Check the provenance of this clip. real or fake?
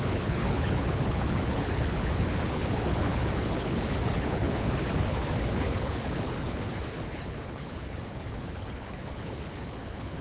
fake